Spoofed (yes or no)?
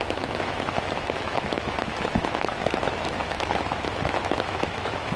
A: yes